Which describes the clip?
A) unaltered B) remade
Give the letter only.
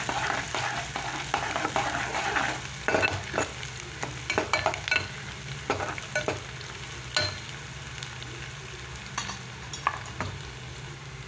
A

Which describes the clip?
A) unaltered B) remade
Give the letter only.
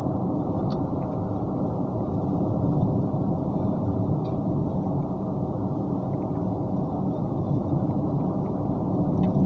A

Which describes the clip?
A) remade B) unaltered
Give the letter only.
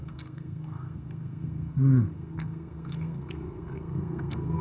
A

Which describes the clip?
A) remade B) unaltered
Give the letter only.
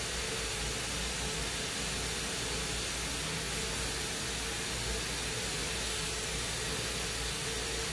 B